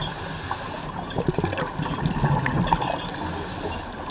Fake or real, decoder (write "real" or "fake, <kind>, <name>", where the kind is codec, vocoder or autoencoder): real